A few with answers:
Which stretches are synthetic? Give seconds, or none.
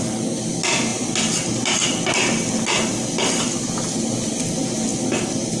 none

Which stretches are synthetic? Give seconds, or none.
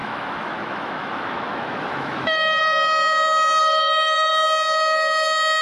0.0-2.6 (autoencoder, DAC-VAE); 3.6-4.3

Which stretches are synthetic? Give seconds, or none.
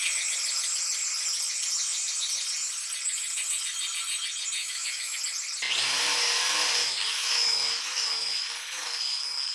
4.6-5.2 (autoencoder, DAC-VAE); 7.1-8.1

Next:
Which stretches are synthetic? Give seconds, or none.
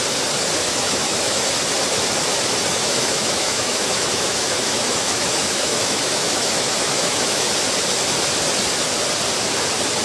0.6-1.5 (autoencoder, DAC-VAE); 2.7-7.5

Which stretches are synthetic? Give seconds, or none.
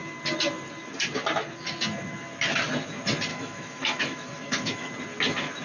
3.3-4.9 (autoencoder, DAC-VAE)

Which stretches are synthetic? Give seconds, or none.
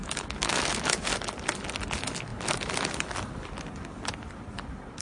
0.0-1.1 (autoencoder, DAC-VAE)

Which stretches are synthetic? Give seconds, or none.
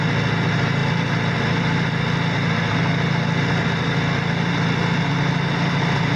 none